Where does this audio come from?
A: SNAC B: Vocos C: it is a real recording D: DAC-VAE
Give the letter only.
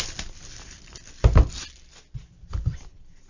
C